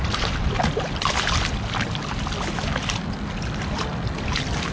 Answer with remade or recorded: recorded